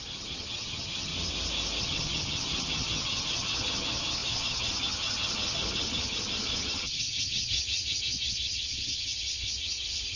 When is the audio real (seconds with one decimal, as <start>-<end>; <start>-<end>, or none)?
1.1-1.8